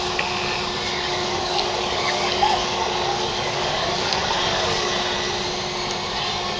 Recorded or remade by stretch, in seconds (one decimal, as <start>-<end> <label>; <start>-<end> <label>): 0.0-0.9 recorded; 0.9-4.9 remade; 4.9-6.6 recorded